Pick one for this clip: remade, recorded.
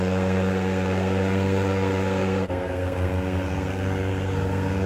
remade